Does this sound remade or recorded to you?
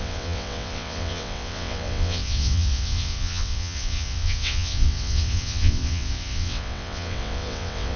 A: remade